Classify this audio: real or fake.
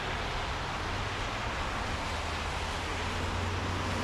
real